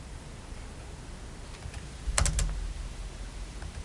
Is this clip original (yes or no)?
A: yes